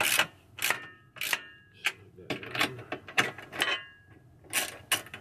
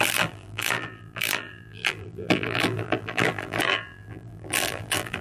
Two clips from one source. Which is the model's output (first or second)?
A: second